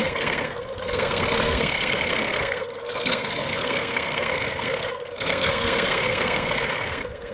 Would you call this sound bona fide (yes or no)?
no